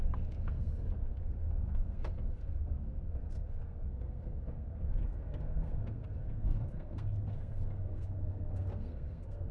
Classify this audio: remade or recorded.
remade